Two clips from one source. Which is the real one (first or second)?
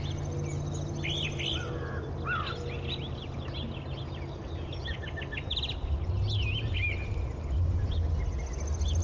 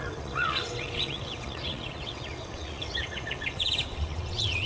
first